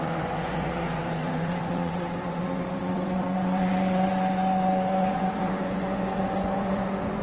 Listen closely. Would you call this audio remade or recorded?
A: remade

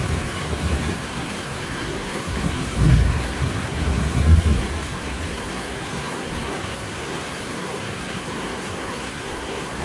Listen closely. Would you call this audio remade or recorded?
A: remade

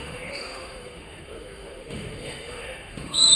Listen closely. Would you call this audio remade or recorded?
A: remade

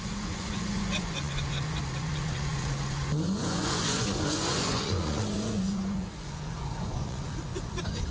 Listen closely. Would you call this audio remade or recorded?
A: remade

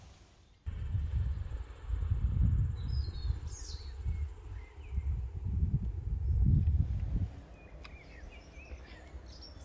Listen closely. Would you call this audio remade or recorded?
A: recorded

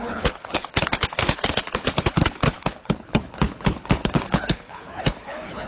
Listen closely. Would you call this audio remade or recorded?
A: remade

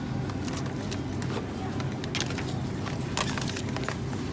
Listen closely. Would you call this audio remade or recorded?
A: recorded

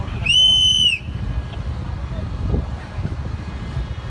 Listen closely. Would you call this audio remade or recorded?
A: recorded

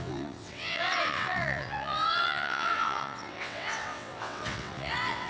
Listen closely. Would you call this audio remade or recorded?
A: remade